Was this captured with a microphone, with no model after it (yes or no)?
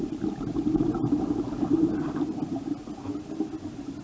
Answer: yes